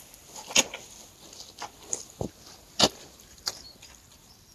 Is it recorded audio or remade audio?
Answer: recorded